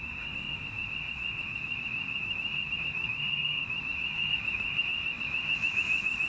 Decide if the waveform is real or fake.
fake